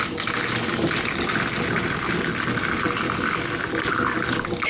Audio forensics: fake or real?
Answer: real